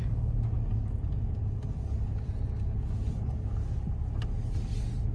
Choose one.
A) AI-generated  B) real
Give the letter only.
B